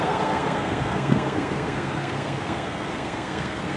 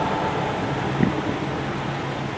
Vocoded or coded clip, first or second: first